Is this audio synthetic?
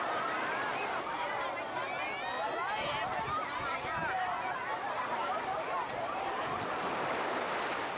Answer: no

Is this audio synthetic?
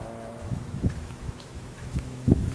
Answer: yes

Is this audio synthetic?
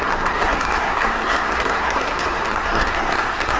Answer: yes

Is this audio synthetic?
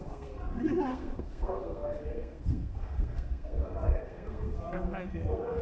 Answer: yes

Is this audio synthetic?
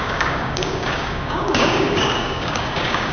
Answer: yes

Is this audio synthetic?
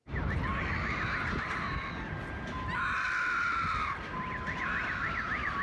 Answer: no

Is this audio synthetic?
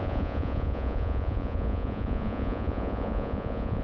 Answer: yes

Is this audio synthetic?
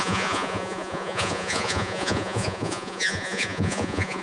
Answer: yes